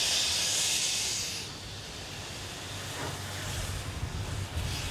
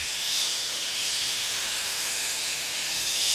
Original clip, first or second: first